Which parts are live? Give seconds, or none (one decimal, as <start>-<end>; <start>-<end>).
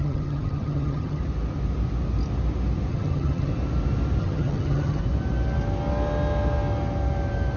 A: 1.2-2.9; 3.5-4.2; 5.0-7.6